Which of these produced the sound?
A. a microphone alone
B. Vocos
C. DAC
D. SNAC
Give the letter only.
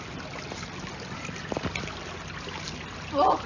A